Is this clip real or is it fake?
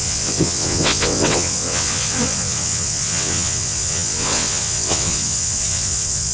fake